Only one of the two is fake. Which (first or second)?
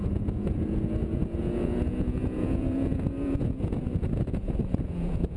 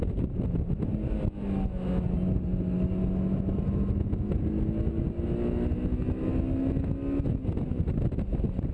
first